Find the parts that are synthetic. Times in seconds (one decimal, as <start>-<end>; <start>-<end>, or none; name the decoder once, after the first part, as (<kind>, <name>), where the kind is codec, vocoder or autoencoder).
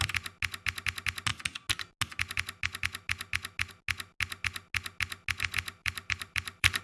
5.8-6.8 (vocoder, BigVGAN v2)